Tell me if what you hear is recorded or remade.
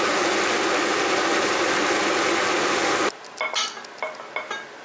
recorded